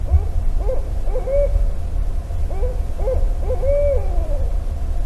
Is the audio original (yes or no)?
yes